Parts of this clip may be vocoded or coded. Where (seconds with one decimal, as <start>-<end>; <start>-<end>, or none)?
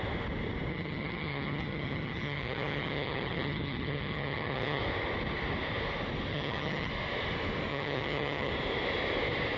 0.7-4.8; 6.3-6.9; 7.7-8.5